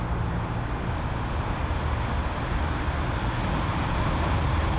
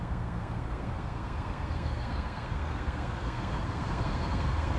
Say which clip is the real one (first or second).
first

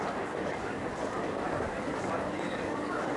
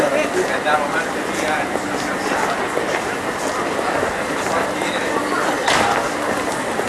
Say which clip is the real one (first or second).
second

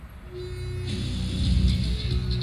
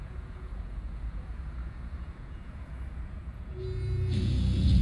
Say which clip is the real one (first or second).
first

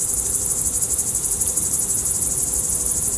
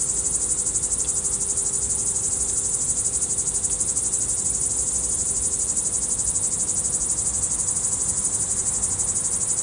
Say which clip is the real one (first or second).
second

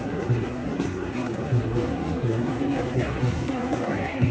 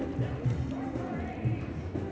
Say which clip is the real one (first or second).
second